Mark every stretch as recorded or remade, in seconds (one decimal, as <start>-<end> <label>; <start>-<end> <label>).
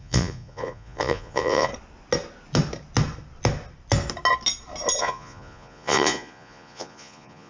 0.0-1.7 remade; 1.7-5.0 recorded; 5.0-7.5 remade